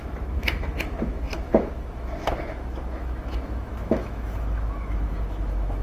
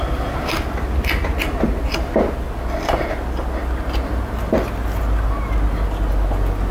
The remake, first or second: first